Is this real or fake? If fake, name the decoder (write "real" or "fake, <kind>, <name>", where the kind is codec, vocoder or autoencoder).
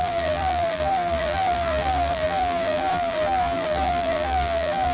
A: fake, vocoder, BigVGAN v2